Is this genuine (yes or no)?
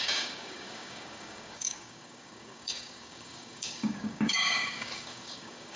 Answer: no